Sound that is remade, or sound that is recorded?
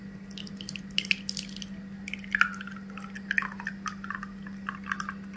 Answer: recorded